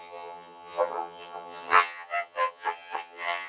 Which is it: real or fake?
fake